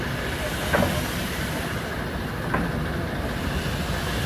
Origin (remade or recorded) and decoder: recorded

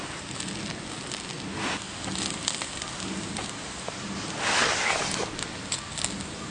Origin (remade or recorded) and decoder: recorded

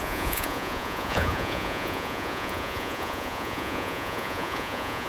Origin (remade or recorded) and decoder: remade, vocoder, Vocos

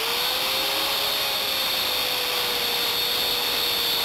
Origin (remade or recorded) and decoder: recorded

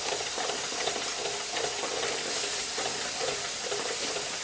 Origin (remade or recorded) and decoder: recorded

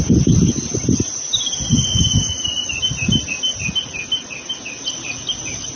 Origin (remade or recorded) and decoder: recorded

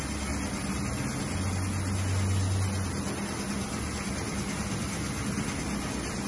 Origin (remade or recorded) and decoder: recorded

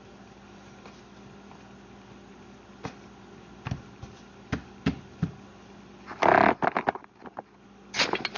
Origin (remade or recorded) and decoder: recorded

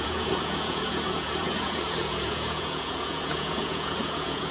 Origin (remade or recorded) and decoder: remade, vocoder, Vocos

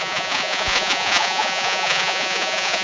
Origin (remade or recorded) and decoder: remade, vocoder, Vocos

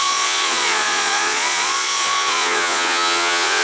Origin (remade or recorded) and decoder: remade, vocoder, Vocos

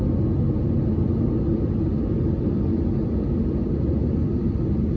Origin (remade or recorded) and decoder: recorded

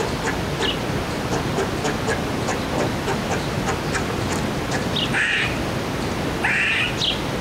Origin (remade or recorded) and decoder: recorded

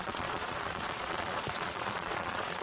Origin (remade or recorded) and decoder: remade, vocoder, Vocos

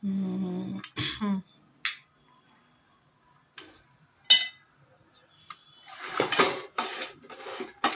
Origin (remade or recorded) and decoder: recorded